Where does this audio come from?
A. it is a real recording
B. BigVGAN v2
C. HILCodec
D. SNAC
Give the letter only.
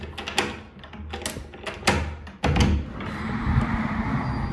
A